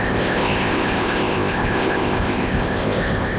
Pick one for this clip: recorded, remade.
remade